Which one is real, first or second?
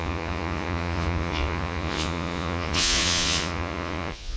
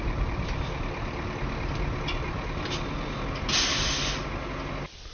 second